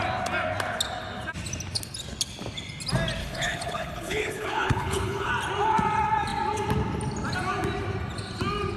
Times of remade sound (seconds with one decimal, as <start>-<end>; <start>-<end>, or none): 3.2-5.3